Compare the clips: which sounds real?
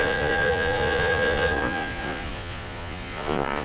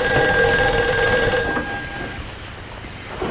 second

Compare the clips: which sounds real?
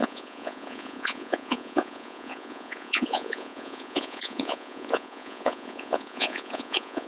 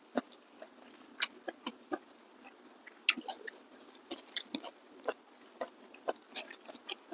second